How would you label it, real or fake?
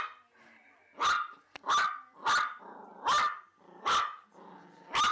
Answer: real